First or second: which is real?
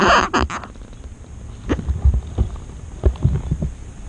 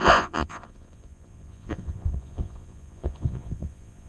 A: first